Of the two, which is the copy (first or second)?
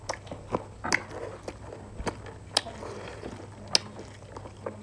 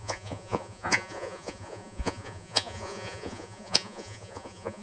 second